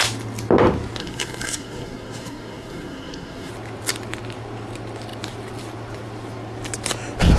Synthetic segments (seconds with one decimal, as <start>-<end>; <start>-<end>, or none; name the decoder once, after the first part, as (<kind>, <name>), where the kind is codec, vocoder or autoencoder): 1.0-3.5 (codec, SNAC)